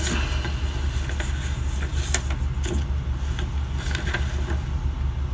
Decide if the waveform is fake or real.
real